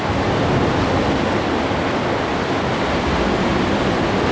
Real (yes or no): yes